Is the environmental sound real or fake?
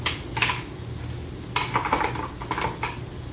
real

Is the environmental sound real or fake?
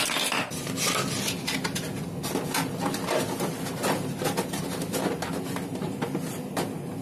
real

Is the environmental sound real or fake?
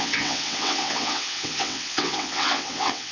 fake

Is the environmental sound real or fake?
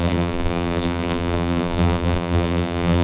fake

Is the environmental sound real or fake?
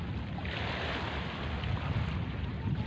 real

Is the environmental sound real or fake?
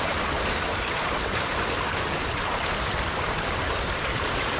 fake